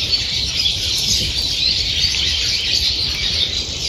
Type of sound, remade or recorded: remade